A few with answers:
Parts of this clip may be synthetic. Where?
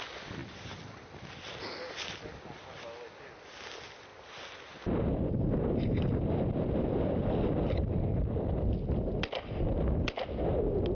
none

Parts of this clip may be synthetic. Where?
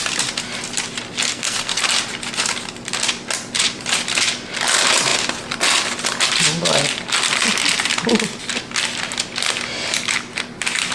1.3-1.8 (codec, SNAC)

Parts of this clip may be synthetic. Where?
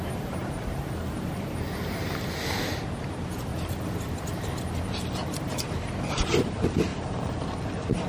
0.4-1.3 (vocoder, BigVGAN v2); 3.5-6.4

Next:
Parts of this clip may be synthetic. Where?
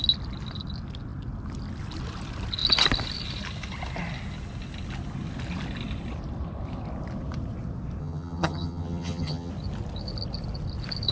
8.0-9.5 (vocoder, HiFi-GAN)